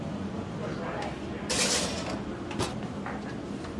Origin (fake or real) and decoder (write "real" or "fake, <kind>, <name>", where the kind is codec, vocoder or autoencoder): real